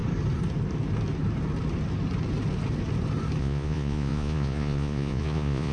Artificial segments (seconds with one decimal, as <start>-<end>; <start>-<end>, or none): 3.4-5.7